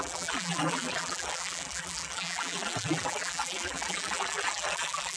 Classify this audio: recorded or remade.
remade